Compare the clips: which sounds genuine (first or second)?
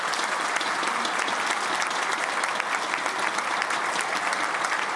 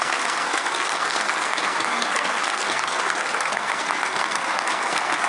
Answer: first